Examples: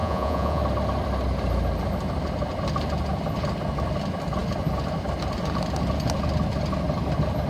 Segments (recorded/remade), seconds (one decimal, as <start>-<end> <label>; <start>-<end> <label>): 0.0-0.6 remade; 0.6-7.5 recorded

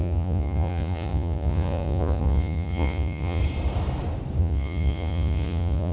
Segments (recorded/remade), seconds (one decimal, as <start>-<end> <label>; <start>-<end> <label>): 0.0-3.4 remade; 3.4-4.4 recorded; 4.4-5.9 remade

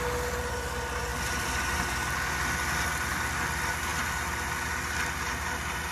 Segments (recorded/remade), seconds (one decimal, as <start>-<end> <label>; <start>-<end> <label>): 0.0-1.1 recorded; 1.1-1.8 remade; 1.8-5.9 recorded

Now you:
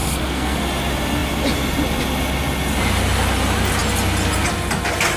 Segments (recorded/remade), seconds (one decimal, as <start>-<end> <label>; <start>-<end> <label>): 0.0-0.6 remade; 0.6-5.2 recorded

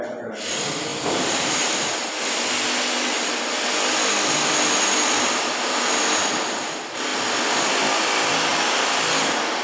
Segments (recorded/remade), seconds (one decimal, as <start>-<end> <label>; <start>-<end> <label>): 0.0-0.9 recorded; 0.9-2.1 remade; 2.1-8.5 recorded; 8.5-9.1 remade; 9.1-9.6 recorded